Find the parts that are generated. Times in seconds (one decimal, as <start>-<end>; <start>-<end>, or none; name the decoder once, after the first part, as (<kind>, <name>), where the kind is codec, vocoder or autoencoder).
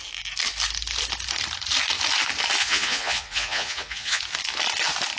2.6-4.2 (vocoder, Vocos)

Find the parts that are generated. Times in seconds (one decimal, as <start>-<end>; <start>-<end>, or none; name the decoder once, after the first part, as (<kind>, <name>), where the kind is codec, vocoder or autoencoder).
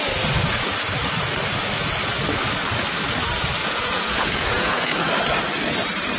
3.6-4.9 (vocoder, Vocos)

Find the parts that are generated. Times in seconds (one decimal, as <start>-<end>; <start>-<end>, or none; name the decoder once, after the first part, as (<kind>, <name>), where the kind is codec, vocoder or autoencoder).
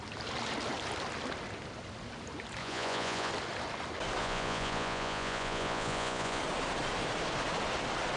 2.6-3.3 (vocoder, Vocos); 4.2-6.4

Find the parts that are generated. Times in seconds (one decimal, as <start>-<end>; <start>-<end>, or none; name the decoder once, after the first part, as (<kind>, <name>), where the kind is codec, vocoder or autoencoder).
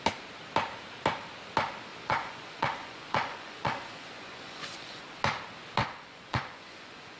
1.9-5.2 (vocoder, Vocos); 5.8-7.2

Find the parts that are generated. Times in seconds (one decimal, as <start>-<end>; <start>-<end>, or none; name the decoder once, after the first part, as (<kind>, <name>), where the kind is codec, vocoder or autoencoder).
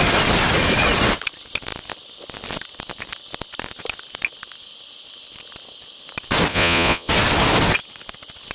6.5-7.1 (vocoder, Vocos)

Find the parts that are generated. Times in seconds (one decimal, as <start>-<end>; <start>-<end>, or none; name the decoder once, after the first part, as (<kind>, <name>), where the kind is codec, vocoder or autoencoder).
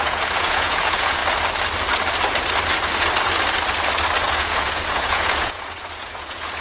0.0-1.2 (vocoder, Vocos); 4.2-6.6